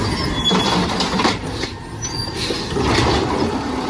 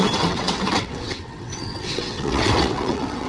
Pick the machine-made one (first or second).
second